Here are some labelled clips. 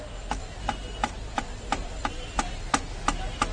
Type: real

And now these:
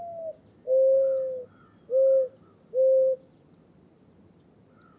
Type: real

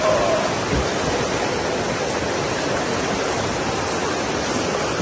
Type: real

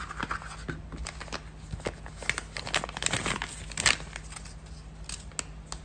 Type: real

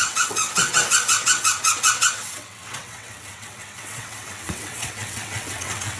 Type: fake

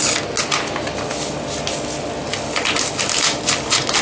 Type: real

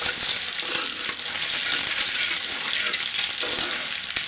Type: real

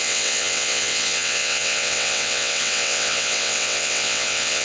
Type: fake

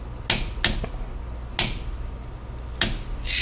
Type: real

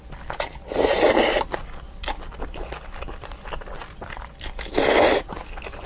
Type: real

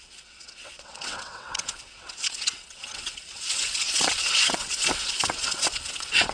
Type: fake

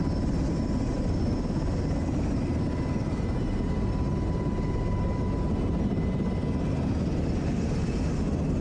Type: real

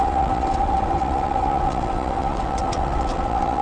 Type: fake